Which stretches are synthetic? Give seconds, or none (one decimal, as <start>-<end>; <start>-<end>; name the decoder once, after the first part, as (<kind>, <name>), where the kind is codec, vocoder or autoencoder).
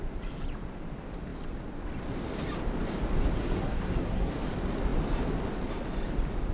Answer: 3.4-4.3 (codec, SNAC)